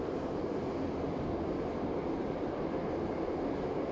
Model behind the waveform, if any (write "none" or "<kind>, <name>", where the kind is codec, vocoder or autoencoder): none